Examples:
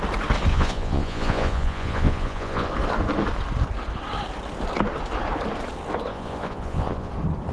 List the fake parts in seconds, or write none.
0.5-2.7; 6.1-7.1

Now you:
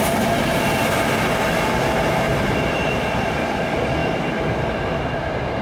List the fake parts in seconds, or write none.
none

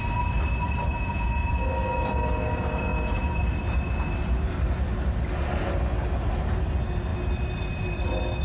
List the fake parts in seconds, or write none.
0.9-1.5